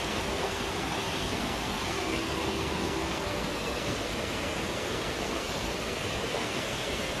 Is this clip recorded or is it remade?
remade